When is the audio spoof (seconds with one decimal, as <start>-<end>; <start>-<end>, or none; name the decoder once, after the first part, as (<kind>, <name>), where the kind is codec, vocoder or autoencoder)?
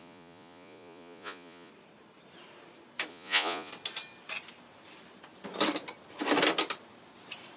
0.0-1.7 (vocoder, Vocos); 3.1-3.7